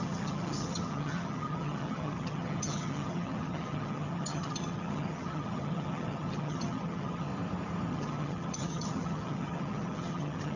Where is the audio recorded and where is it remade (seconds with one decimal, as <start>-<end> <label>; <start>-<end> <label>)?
0.0-7.3 remade; 7.3-7.9 recorded; 7.9-10.6 remade